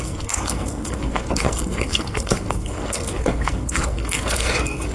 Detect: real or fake fake